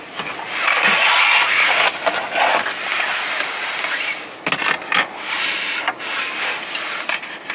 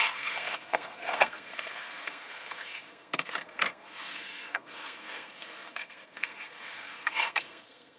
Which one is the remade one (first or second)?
second